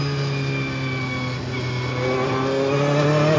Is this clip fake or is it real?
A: real